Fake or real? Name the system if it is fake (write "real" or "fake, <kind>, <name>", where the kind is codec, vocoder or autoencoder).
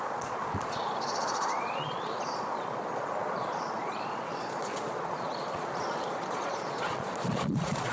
fake, vocoder, Vocos